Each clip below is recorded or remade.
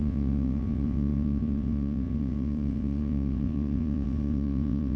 remade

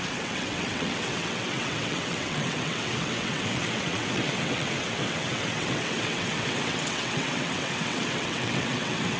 remade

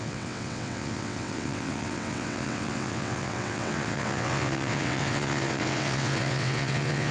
remade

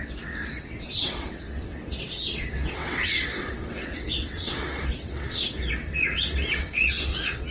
remade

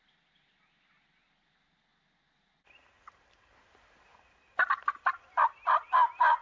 recorded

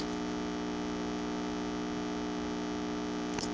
recorded